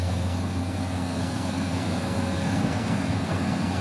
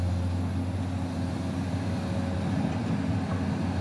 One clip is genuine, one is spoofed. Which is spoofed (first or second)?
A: first